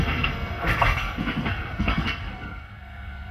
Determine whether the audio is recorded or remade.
remade